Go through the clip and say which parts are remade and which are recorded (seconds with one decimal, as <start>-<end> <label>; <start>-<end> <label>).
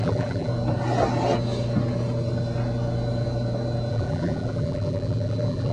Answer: 0.0-0.5 remade; 0.5-3.9 recorded; 3.9-5.7 remade